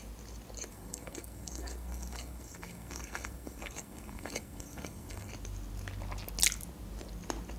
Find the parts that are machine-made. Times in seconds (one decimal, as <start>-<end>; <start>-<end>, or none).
0.7-5.3